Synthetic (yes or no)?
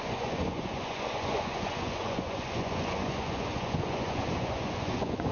yes